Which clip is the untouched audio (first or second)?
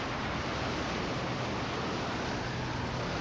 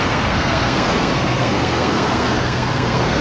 first